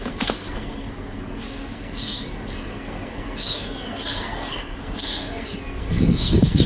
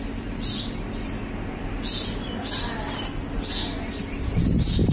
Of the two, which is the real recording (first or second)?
second